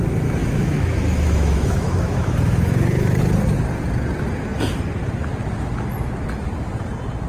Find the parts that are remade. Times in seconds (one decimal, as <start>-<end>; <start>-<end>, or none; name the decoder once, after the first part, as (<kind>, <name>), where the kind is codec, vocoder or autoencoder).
0.4-3.2 (autoencoder, DAC-VAE)